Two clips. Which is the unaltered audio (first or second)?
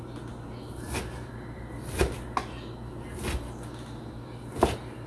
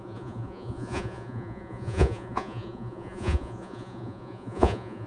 first